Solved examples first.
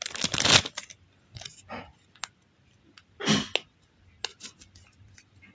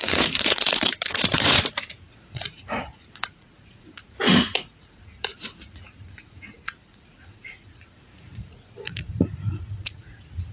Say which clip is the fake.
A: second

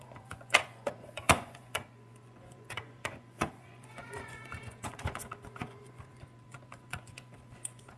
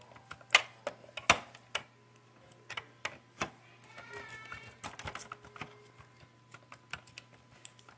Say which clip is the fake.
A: first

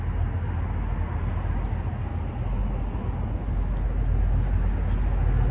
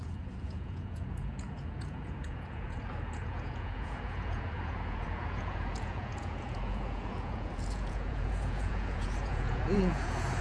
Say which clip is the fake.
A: second